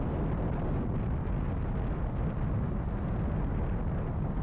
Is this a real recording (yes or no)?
yes